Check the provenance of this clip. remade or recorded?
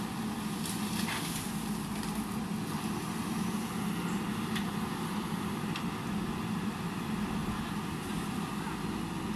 recorded